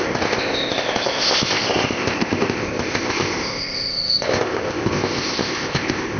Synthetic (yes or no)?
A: yes